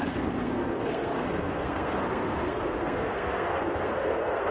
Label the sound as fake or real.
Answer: fake